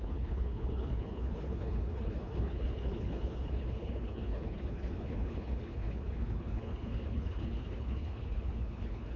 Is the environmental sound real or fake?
fake